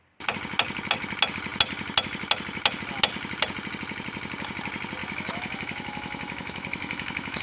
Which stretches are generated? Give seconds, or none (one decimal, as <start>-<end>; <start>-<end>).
5.0-7.4